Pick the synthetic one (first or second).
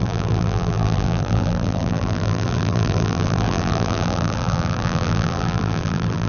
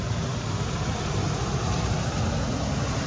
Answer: first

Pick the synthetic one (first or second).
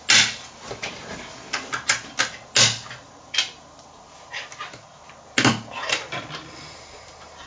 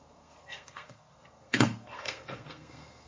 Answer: second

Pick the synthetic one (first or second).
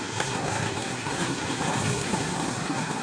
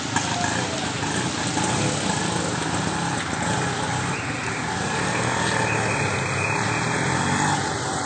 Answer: first